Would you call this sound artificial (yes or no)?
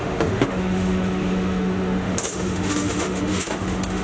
yes